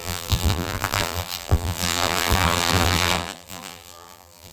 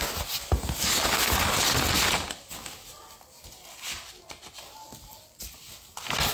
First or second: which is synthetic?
first